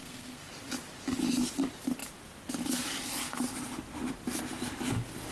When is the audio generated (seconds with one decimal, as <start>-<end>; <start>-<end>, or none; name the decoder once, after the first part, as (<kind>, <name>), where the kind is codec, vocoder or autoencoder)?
0.0-0.5 (codec, SNAC)